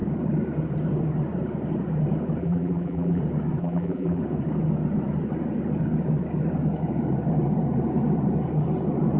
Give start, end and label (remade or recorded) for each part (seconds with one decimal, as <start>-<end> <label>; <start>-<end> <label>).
0.0-2.4 recorded; 2.4-3.2 remade; 3.2-3.6 recorded; 3.6-4.2 remade; 4.2-9.2 recorded